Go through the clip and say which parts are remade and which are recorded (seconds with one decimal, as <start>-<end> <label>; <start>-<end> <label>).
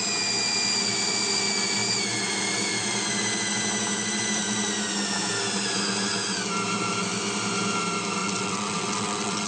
0.0-8.2 recorded; 8.2-9.5 remade